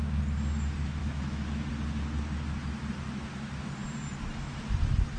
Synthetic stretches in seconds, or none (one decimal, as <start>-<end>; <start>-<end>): 1.0-1.7